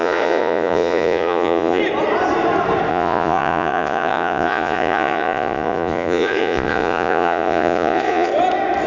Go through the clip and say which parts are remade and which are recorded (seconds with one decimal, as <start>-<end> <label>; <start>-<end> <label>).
0.0-1.8 remade; 1.8-2.9 recorded; 2.9-8.3 remade; 8.3-8.9 recorded

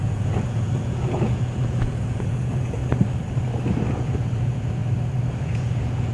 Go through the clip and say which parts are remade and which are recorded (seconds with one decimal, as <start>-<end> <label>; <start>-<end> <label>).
0.0-2.8 remade; 2.8-3.9 recorded; 3.9-4.8 remade; 4.8-5.4 recorded; 5.4-6.1 remade

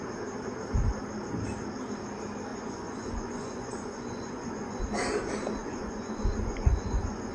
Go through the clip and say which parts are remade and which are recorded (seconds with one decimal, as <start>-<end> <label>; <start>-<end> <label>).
0.0-2.5 recorded; 2.5-4.8 remade; 4.8-5.6 recorded; 5.6-7.3 remade